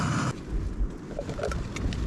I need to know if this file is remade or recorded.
recorded